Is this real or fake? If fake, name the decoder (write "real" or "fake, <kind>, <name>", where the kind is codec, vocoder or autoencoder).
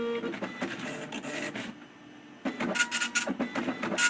real